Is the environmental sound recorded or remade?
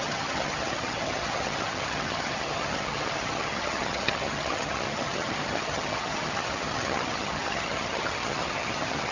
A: remade